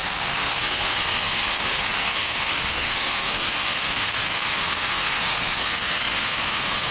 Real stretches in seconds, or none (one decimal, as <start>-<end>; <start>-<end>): none